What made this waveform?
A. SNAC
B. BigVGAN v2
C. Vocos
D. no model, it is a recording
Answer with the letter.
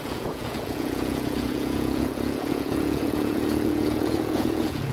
C